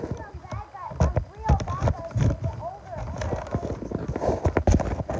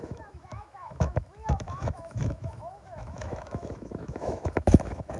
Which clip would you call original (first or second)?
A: first